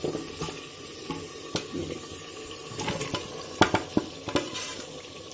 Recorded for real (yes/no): yes